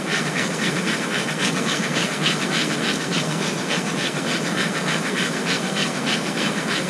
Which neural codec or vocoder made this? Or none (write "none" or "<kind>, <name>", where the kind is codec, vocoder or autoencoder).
codec, SNAC